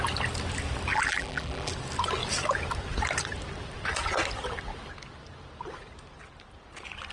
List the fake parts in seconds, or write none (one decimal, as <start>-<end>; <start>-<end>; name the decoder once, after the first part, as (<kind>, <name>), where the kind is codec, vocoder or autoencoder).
0.9-1.7 (vocoder, BigVGAN v2)